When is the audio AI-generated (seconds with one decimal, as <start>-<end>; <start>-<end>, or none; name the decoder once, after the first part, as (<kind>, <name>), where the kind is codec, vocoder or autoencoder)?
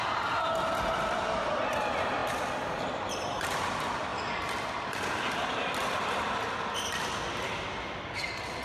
none